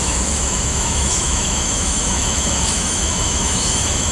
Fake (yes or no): yes